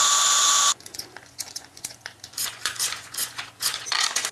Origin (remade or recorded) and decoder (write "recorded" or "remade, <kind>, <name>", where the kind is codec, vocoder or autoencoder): remade, vocoder, Vocos